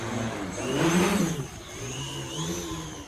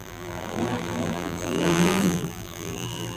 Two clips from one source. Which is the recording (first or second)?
first